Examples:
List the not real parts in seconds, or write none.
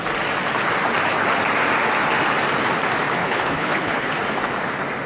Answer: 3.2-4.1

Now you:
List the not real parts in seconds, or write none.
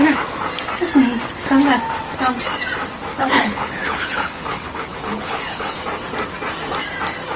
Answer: 3.1-5.8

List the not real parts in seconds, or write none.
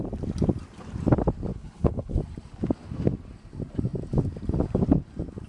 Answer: 1.5-2.2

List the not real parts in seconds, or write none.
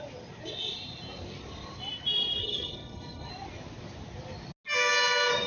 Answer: 2.4-3.3